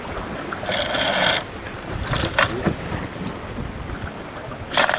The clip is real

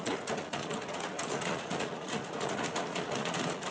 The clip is fake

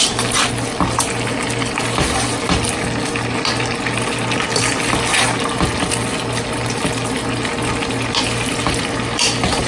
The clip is real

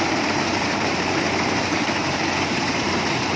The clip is fake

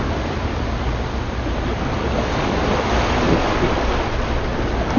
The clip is real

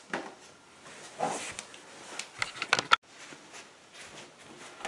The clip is real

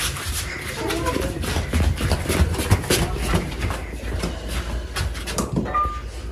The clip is real